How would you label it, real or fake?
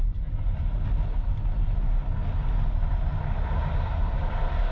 real